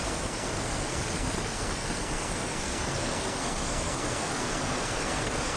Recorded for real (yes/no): no